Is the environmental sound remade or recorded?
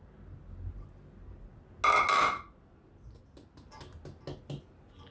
recorded